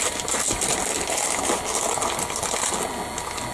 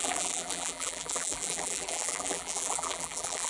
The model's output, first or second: second